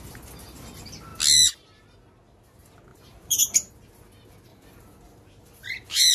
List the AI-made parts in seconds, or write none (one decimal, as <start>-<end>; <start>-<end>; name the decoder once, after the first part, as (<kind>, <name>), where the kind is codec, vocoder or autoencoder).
2.9-3.7 (vocoder, BigVGAN v2); 4.5-6.1